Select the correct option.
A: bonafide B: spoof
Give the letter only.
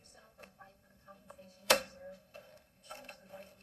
B